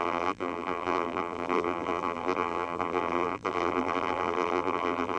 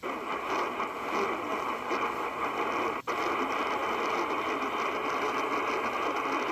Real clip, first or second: second